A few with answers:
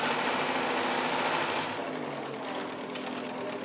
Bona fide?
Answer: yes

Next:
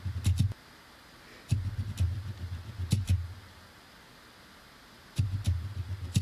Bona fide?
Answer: yes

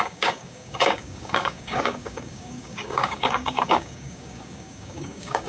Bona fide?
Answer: no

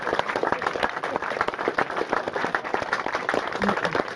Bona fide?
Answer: yes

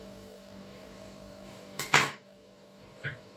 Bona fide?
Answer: no